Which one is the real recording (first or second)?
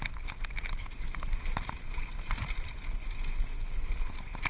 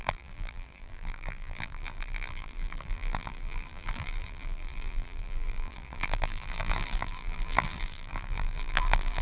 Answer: first